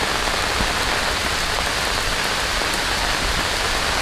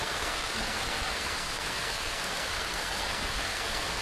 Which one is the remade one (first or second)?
second